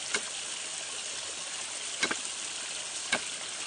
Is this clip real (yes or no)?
yes